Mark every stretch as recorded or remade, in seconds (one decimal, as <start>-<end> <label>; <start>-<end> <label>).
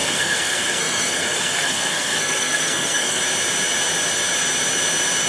0.0-3.2 remade; 3.2-5.3 recorded